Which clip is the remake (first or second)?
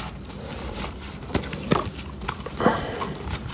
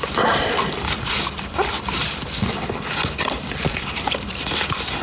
second